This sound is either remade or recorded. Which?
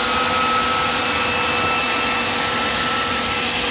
recorded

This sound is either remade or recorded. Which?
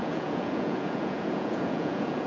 remade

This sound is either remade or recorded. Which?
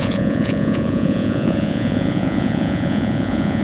remade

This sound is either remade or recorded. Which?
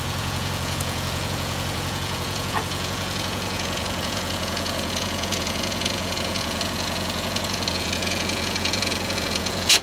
remade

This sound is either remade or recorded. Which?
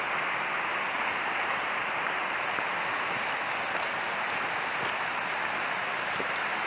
recorded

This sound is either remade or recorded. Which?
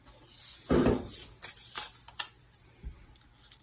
recorded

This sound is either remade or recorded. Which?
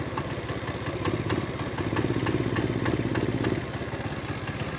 recorded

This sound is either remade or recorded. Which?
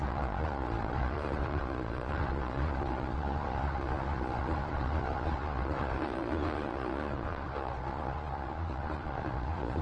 remade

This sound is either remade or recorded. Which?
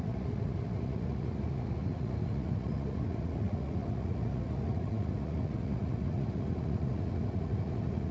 remade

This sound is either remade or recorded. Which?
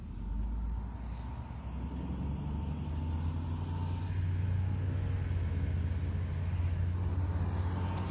recorded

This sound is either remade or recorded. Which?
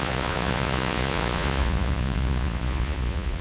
remade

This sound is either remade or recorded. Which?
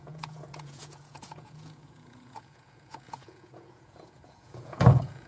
remade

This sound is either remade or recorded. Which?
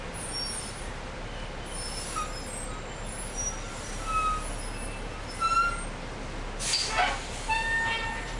recorded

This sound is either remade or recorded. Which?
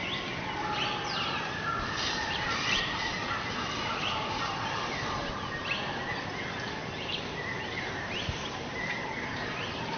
recorded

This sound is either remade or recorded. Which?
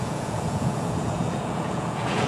remade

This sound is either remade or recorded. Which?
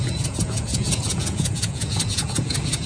remade